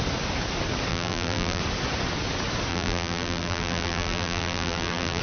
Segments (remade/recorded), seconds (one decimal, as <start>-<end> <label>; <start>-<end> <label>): 0.0-0.9 recorded; 0.9-1.6 remade; 1.6-2.7 recorded; 2.7-5.2 remade